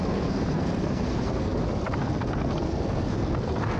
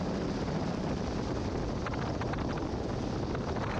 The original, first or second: second